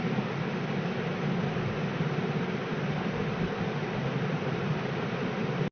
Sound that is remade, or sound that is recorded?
recorded